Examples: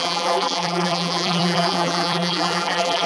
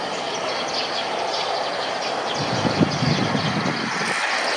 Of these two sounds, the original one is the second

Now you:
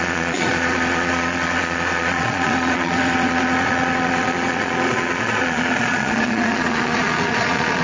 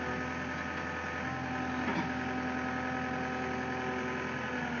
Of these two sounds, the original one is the second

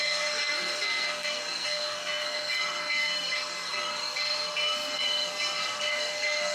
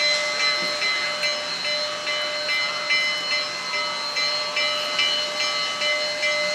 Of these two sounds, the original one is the second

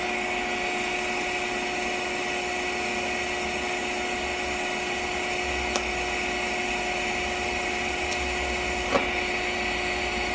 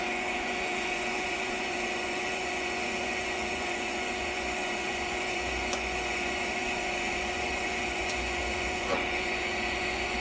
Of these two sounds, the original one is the first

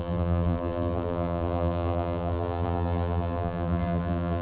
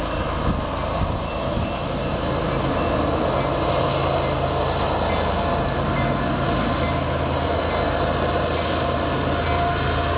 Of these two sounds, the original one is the second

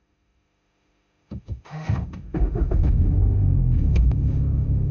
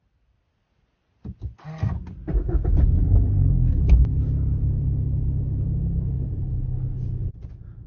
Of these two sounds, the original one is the second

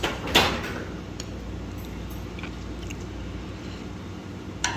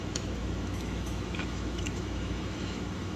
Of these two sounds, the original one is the first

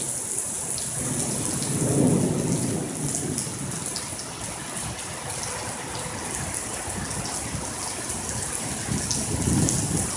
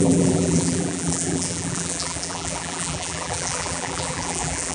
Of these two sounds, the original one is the first